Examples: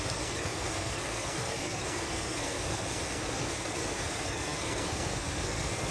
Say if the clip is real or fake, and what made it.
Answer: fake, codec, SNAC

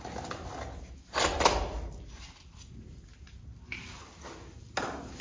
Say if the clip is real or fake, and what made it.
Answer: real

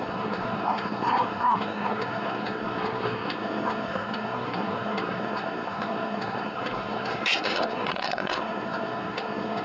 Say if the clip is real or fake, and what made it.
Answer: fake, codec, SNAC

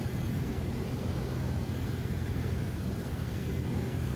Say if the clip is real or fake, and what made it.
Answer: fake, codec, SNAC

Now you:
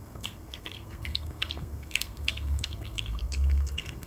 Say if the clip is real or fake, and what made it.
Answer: fake, codec, SNAC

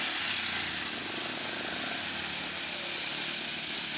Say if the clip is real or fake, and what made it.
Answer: real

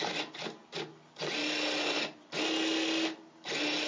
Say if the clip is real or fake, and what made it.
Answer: real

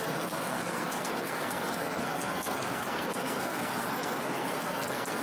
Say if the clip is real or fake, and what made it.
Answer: fake, codec, SNAC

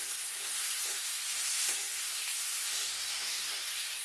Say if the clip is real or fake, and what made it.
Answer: fake, codec, SNAC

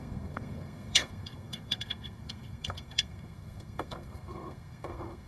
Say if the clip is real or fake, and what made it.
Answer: fake, codec, SNAC